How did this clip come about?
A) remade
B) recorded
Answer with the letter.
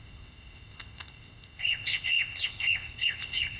A